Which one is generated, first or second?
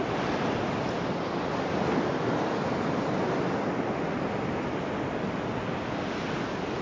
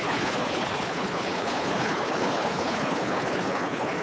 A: second